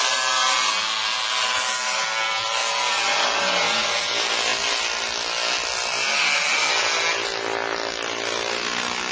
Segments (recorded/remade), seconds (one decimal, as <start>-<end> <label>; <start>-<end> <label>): 0.0-9.1 recorded